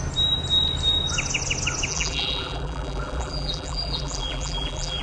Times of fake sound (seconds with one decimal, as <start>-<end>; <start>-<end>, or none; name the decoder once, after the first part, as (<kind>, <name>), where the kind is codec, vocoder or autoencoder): 1.9-5.0 (vocoder, BigVGAN v2)